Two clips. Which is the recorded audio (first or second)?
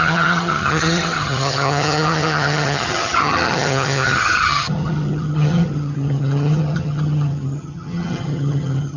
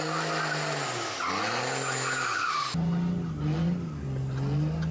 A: second